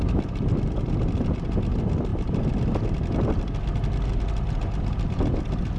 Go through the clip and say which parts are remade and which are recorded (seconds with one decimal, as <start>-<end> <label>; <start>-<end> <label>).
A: 0.0-5.8 recorded